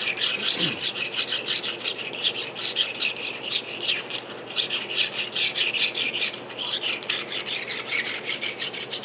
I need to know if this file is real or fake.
real